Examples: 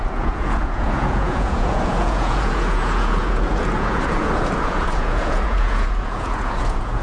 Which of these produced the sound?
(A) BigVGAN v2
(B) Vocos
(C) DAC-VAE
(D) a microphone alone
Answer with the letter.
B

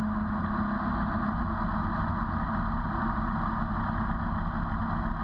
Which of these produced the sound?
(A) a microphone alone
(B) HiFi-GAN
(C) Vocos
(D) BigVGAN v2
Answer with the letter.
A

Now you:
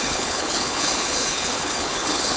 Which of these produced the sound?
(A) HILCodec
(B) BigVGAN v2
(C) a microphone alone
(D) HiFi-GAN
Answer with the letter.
A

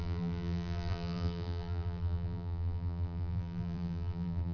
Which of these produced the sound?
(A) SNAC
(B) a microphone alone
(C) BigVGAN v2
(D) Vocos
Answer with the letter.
C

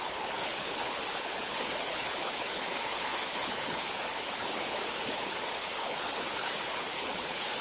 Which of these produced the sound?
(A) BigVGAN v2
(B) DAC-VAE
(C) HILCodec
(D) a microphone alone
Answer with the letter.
C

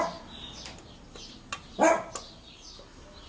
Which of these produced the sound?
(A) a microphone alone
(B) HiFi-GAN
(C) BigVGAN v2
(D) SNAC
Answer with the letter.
A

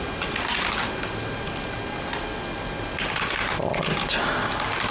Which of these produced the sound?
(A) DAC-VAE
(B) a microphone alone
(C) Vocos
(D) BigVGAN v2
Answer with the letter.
B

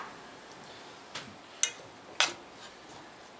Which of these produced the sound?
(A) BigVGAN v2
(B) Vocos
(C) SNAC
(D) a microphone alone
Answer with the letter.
D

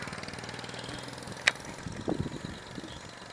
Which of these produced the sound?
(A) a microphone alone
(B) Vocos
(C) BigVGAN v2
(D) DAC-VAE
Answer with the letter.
A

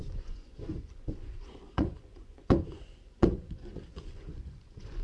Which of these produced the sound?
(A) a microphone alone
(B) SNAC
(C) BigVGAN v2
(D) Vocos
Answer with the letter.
D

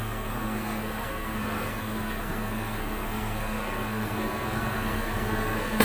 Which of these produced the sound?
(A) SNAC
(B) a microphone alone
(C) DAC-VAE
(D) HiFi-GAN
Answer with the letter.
A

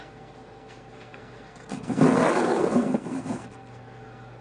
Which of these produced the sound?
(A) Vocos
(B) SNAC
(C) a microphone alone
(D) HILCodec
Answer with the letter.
B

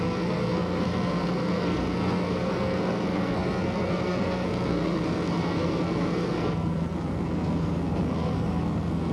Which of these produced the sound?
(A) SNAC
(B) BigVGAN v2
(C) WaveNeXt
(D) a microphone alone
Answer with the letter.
A